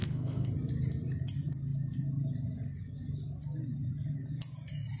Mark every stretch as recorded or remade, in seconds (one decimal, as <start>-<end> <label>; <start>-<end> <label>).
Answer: 0.0-0.5 remade; 0.5-5.0 recorded